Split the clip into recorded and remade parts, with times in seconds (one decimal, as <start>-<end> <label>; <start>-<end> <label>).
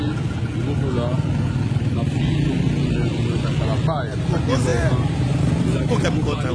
0.0-4.7 recorded; 4.7-6.5 remade